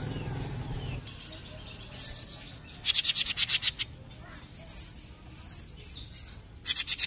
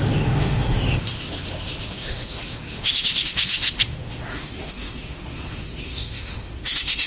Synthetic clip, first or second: second